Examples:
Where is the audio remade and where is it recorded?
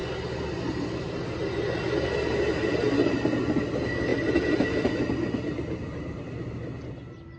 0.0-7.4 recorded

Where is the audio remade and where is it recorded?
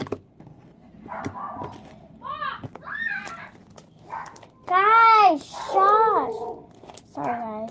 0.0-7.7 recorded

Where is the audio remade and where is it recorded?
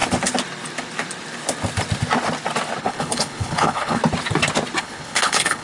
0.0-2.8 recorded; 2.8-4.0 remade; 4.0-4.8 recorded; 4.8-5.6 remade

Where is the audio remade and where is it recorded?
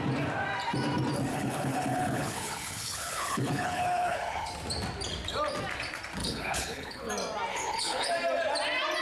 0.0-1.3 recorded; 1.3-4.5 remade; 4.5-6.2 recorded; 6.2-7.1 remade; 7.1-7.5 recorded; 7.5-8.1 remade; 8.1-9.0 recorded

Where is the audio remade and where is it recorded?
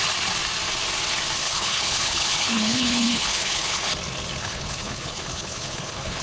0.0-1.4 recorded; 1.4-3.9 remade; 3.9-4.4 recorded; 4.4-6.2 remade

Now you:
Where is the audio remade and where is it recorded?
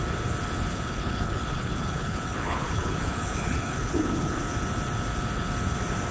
0.0-0.7 recorded; 0.7-4.4 remade; 4.4-6.1 recorded